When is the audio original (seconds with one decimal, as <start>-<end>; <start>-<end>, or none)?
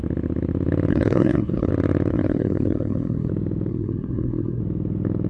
0.0-0.9; 1.7-2.1; 3.3-3.7; 4.6-5.3